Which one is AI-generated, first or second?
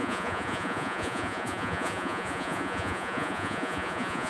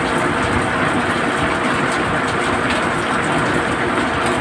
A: first